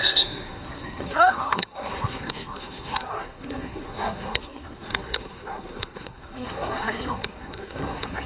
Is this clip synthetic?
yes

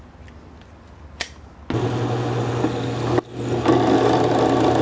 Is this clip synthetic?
no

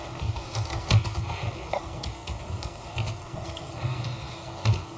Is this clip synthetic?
yes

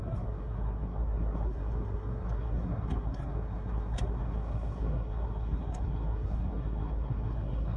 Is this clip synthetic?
yes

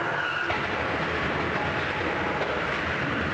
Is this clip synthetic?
no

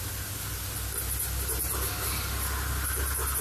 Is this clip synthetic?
no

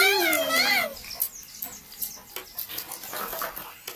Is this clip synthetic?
no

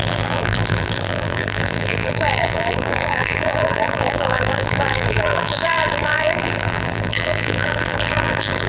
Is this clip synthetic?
yes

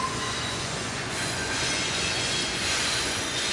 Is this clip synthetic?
yes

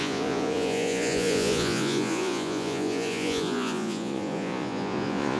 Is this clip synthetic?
yes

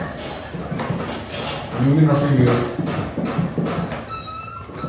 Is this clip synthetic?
no